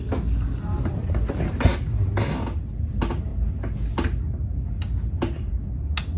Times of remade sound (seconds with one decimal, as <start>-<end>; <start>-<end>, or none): none